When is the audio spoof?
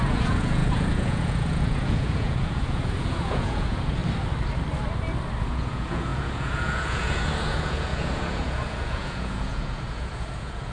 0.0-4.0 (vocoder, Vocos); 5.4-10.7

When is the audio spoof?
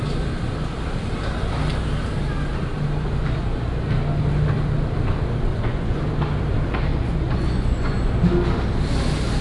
5.5-6.0 (vocoder, Vocos); 6.9-8.2